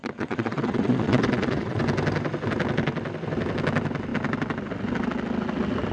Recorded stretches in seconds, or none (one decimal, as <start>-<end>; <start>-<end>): 1.8-5.9